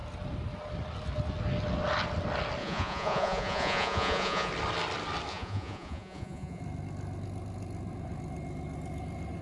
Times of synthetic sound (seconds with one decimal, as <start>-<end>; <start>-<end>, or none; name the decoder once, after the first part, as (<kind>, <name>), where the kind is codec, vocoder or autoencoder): 2.6-4.5 (vocoder, Vocos); 5.3-6.6